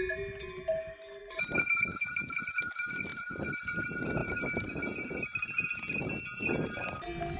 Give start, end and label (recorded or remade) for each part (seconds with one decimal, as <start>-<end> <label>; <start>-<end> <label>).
0.0-1.2 recorded; 1.2-2.6 remade; 2.6-3.1 recorded; 3.1-3.8 remade; 3.8-7.4 recorded